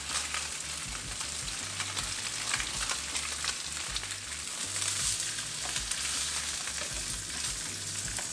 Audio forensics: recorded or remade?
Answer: recorded